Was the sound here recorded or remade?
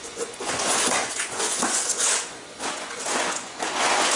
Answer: remade